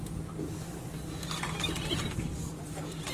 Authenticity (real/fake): real